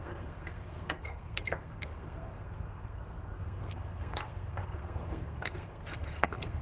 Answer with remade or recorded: remade